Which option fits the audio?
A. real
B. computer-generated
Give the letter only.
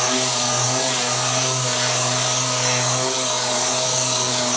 B